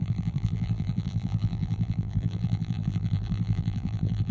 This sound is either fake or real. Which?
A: fake